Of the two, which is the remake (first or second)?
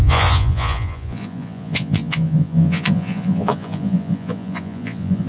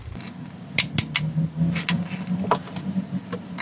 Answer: first